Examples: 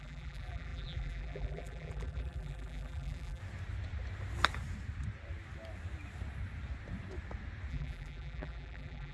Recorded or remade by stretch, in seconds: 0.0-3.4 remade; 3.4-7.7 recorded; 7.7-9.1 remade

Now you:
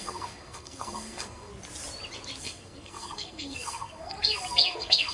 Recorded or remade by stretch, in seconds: 0.0-1.5 remade; 1.5-2.4 recorded; 2.4-5.1 remade

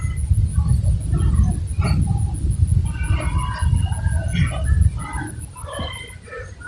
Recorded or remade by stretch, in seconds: 0.0-6.7 recorded

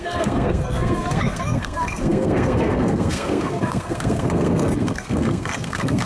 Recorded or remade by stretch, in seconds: 0.0-6.1 remade

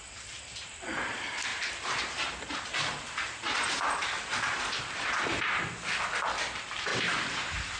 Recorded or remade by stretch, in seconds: 0.0-1.5 recorded; 1.5-2.1 remade; 2.1-4.0 recorded; 4.0-4.5 remade; 4.5-6.9 recorded; 6.9-7.8 remade

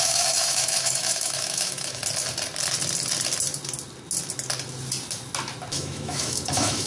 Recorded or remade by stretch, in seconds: 0.0-2.0 remade; 2.0-5.7 recorded; 5.7-6.9 remade